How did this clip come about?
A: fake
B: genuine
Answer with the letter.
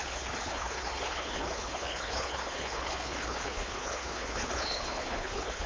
A